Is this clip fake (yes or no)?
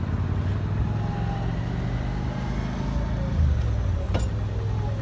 no